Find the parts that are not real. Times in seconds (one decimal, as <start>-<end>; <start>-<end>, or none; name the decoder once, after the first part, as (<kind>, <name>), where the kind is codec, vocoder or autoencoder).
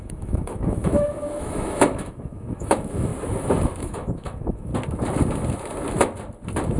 0.0-3.1 (autoencoder, DAC-VAE); 3.8-4.7